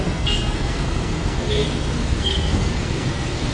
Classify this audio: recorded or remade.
remade